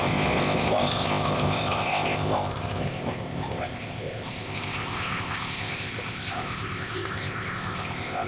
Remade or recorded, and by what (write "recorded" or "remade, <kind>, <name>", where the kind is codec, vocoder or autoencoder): remade, codec, ZipCodec